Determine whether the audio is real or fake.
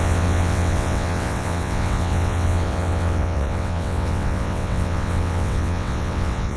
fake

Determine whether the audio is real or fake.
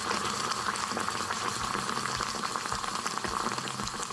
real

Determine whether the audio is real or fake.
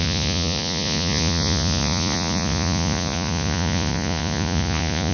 fake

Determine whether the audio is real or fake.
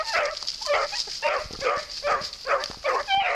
real